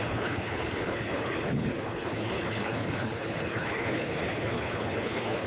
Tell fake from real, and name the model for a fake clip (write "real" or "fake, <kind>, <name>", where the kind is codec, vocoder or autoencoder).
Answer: fake, codec, HILCodec